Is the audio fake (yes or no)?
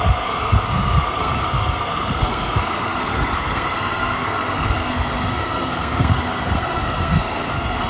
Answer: yes